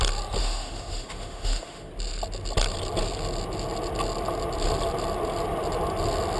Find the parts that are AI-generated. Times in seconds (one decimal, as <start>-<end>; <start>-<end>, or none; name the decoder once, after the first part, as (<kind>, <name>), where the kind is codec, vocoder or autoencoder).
0.4-1.9 (autoencoder, DAC-VAE)